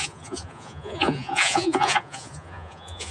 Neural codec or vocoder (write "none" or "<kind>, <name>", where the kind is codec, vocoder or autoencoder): vocoder, Vocos